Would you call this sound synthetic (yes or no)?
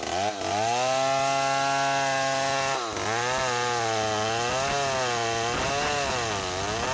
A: no